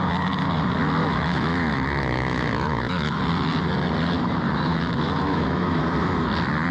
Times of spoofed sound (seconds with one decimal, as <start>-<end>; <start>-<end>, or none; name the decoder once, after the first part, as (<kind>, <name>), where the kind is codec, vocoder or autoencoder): 1.0-3.2 (autoencoder, DAC-VAE); 4.7-5.8